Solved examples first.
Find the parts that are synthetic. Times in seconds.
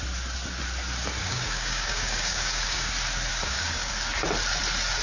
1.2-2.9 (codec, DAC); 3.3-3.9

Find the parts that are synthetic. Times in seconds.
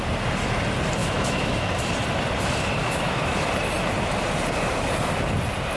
1.0-1.7 (autoencoder, DAC-VAE); 2.8-3.5